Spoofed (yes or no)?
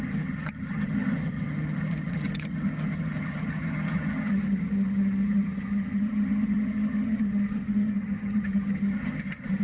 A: yes